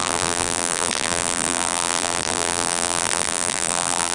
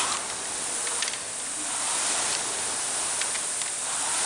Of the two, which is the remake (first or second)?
first